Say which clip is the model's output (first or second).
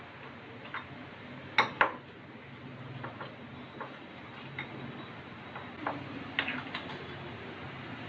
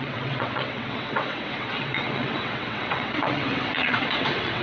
second